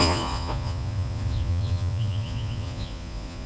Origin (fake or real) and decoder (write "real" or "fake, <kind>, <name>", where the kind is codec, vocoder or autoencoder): fake, vocoder, Vocos